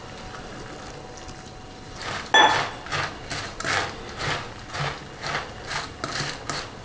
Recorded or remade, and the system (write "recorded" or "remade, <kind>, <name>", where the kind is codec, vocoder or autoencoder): recorded